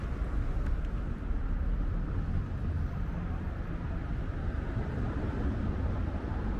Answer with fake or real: fake